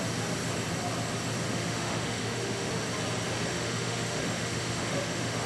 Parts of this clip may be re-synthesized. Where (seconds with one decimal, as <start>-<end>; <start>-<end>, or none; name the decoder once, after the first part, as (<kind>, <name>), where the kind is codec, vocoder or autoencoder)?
1.5-2.7 (autoencoder, DAC-VAE); 3.5-5.5